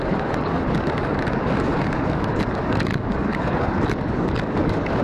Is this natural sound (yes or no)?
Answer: no